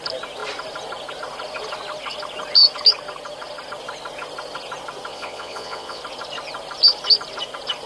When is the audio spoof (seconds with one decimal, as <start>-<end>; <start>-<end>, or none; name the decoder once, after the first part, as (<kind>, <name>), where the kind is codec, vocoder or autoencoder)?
5.1-6.0 (vocoder, Vocos)